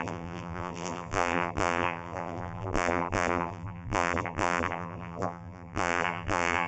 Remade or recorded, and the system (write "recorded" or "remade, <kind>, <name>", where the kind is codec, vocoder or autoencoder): remade, vocoder, BigVGAN v2